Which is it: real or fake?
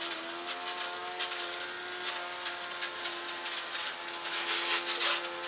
real